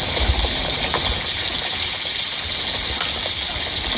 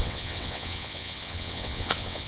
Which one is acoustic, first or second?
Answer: first